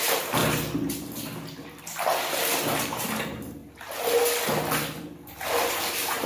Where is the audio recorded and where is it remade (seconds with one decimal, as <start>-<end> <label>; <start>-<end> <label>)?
0.0-0.4 remade; 0.4-2.5 recorded; 2.5-3.6 remade; 3.6-5.7 recorded; 5.7-6.3 remade